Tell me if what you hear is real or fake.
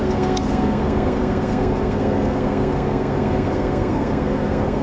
fake